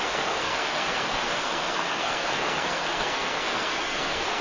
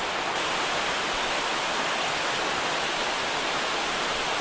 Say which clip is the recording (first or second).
second